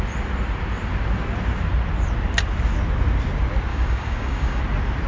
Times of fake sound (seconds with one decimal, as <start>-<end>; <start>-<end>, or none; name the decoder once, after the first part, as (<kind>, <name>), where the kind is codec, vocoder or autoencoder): 3.7-4.6 (codec, DAC)

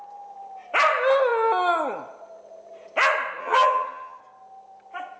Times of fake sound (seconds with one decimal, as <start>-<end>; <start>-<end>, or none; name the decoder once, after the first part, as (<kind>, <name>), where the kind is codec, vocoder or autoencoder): 3.4-4.2 (vocoder, HiFi-GAN)

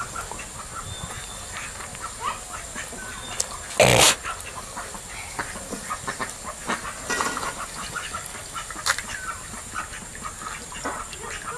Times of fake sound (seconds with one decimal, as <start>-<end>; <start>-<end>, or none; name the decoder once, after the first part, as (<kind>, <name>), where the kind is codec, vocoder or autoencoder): none

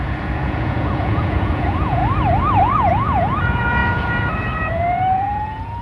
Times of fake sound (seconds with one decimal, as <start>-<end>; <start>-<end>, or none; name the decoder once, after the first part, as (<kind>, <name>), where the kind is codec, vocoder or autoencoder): 0.0-2.0 (vocoder, Vocos); 2.6-5.8

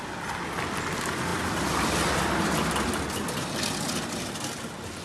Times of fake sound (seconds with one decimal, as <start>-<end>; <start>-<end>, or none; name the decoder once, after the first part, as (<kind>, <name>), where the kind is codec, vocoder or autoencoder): none